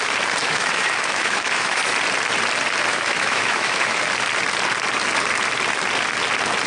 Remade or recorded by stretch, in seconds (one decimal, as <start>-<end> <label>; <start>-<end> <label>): 0.0-0.4 recorded; 0.4-1.8 remade; 1.8-2.9 recorded; 2.9-4.0 remade; 4.0-6.7 recorded